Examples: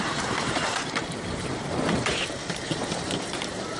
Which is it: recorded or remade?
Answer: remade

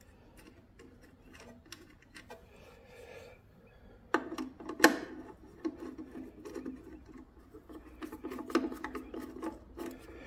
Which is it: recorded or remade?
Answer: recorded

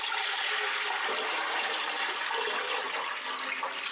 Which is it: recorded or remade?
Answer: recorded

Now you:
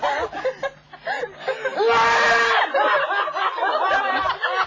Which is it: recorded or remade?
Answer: recorded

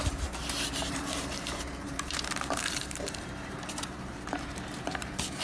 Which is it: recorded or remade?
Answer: remade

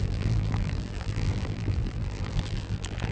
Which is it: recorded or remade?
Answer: remade